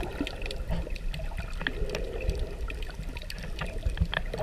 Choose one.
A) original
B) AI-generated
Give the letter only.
A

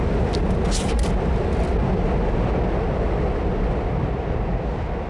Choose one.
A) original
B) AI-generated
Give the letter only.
A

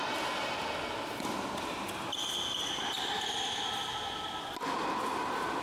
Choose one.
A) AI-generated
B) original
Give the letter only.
B